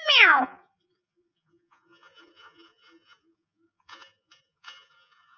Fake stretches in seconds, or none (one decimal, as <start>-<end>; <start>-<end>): 0.0-5.4